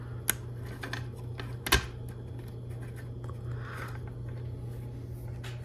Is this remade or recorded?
recorded